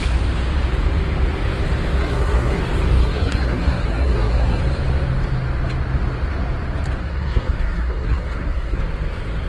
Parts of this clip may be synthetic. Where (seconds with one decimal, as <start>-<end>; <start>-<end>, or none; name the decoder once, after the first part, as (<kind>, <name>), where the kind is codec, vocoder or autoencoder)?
2.0-2.6 (codec, SNAC); 3.0-4.6; 7.0-8.8